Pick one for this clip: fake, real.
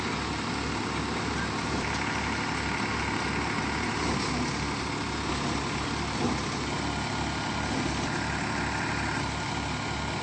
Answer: real